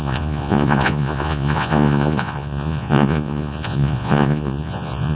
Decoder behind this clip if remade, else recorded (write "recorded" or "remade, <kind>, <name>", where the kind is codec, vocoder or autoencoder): remade, vocoder, Vocos